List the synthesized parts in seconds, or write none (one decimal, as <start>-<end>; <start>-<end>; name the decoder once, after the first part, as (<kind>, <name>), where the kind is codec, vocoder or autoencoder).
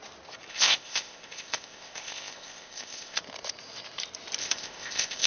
0.5-3.2 (codec, ZipCodec); 4.4-5.3